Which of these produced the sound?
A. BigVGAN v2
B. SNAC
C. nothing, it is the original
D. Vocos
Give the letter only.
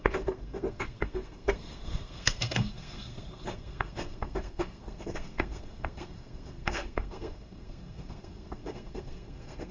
B